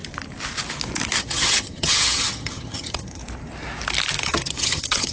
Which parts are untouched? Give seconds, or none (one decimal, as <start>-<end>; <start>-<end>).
0.0-1.2; 3.2-4.2